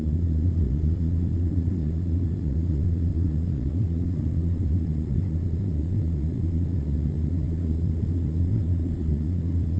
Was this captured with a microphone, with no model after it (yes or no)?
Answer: no